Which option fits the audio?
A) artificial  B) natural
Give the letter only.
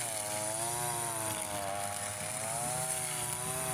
B